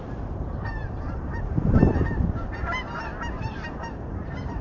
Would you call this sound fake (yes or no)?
yes